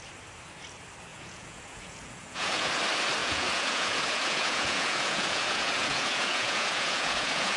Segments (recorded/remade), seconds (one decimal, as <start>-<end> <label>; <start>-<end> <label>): 0.0-1.1 recorded; 1.1-2.7 remade; 2.7-3.2 recorded; 3.2-7.6 remade